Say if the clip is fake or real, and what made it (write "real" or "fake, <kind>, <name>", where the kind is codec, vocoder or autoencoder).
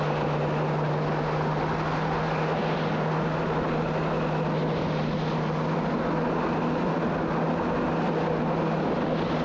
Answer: real